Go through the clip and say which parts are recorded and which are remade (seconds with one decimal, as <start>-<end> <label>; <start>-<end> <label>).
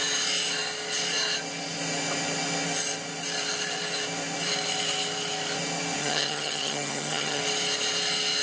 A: 0.0-6.0 recorded; 6.0-7.4 remade; 7.4-8.4 recorded